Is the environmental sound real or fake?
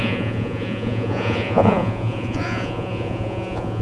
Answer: fake